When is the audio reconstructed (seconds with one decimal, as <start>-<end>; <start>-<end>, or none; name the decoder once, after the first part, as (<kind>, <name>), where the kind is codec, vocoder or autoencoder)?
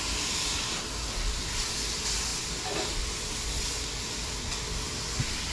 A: none